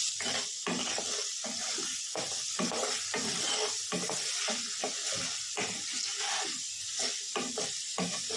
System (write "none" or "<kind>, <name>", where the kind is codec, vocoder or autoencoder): none